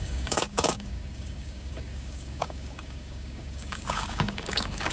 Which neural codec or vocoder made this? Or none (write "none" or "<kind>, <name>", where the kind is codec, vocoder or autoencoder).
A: codec, DAC